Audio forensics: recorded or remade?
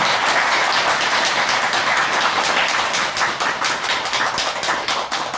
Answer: recorded